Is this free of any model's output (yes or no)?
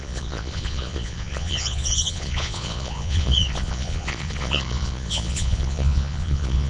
no